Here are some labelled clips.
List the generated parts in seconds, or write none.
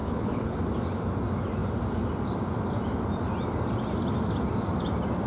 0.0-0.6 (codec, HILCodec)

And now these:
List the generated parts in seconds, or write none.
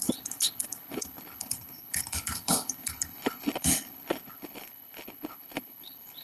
0.0-6.2 (codec, HILCodec)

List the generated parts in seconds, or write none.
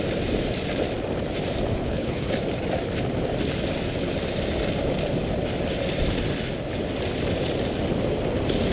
1.8-2.3 (codec, HILCodec)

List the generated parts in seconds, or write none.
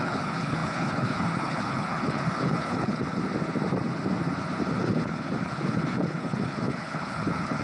0.0-3.2 (codec, HILCodec); 4.8-7.6